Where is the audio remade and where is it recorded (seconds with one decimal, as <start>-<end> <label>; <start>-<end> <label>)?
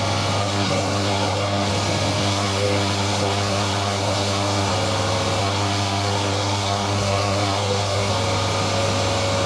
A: 0.0-0.4 recorded; 0.4-1.7 remade; 1.7-2.2 recorded; 2.2-4.7 remade; 4.7-5.4 recorded; 5.4-8.1 remade; 8.1-9.5 recorded